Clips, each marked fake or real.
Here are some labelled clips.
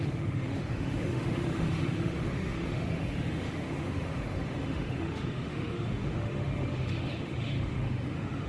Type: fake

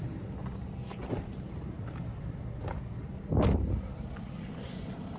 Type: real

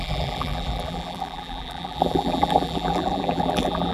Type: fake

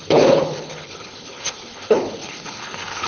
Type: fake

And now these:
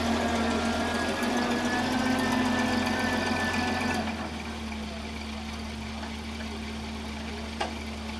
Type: real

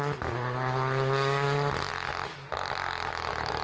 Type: real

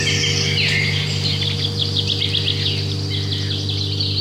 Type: real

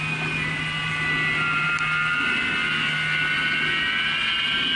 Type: real